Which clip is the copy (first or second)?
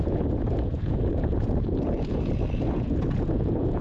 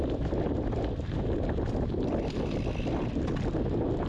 first